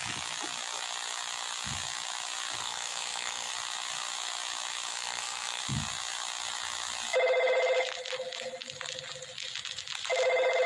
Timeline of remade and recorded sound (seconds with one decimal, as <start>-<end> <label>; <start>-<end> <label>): 0.0-2.6 recorded; 2.6-3.5 remade; 3.5-4.9 recorded; 4.9-5.6 remade; 5.6-10.7 recorded